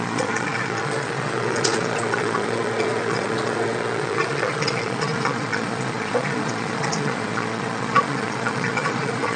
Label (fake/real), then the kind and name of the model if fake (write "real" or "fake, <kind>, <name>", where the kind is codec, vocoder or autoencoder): fake, vocoder, Vocos